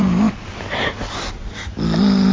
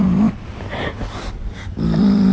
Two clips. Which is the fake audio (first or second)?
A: second